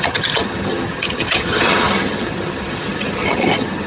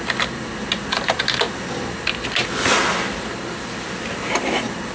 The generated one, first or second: first